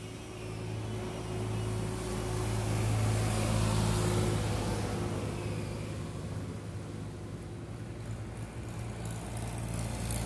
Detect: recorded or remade recorded